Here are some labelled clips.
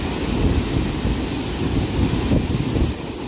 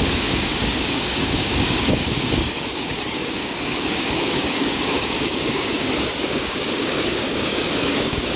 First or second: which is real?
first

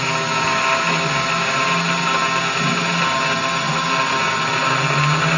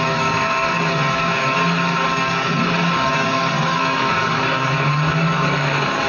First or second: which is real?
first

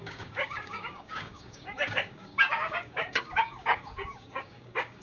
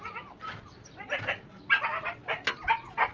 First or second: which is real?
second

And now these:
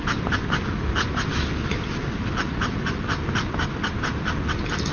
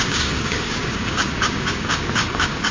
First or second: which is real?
first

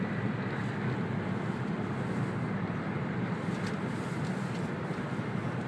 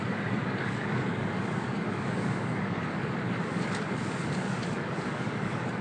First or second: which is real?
first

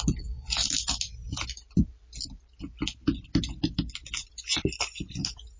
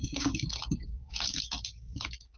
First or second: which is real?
first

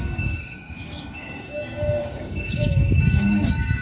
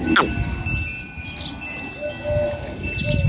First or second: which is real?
second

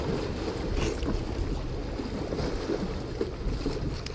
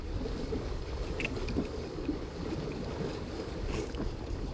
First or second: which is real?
first